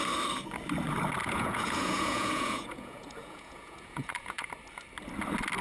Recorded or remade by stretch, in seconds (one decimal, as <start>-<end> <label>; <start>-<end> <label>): 0.0-1.2 recorded; 1.2-4.5 remade; 4.5-5.6 recorded